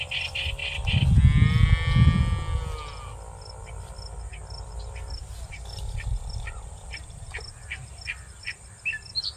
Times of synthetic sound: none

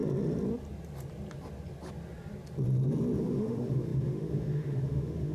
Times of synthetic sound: 3.2-5.3 (autoencoder, DAC-VAE)

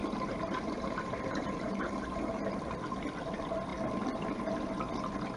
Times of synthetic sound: 0.0-2.6 (vocoder, BigVGAN v2)

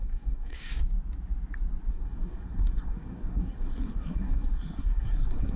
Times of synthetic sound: 0.0-0.8 (codec, SNAC); 1.9-5.6